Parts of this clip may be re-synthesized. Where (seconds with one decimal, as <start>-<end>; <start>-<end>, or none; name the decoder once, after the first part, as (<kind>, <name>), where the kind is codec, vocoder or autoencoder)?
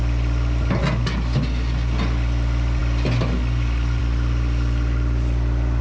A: none